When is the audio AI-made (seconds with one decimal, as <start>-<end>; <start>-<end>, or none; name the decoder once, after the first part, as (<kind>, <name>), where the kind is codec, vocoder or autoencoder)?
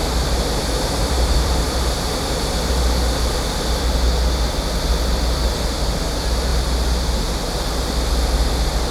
0.0-2.7 (vocoder, BigVGAN v2)